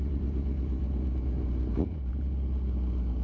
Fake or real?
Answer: real